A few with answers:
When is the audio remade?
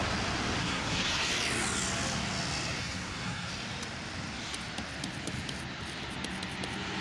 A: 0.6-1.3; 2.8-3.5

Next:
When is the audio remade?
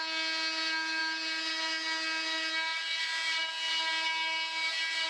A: none